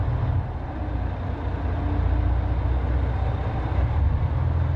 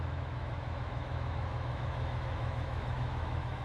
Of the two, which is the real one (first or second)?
first